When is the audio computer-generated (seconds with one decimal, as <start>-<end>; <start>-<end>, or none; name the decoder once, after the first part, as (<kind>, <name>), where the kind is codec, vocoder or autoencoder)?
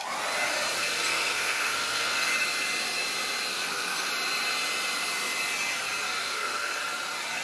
0.8-2.3 (codec, SNAC); 3.5-4.1; 6.2-6.8